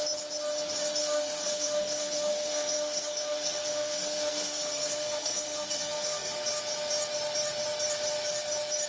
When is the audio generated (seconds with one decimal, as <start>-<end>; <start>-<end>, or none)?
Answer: 1.0-6.3